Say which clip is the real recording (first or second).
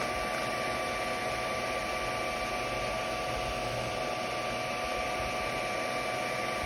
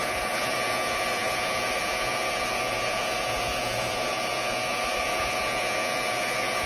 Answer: first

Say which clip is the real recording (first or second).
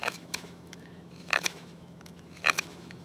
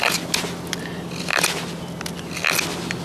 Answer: second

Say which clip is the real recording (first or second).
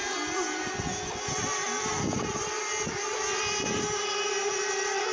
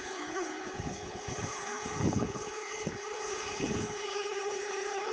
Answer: first